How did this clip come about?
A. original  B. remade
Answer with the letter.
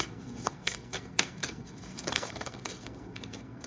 B